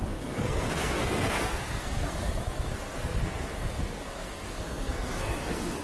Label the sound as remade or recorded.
remade